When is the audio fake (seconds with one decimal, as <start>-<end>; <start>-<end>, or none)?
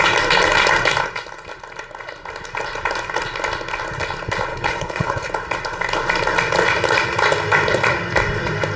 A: 4.5-5.3